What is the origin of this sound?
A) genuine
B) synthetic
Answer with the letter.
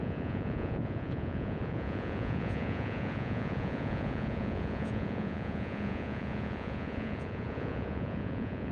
B